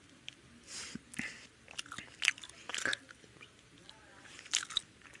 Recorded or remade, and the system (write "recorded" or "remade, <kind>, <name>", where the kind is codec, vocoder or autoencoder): recorded